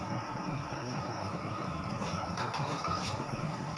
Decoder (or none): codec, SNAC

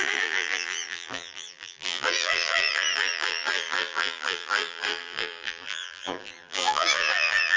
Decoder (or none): vocoder, BigVGAN v2